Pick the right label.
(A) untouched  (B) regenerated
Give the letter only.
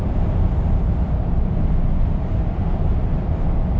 A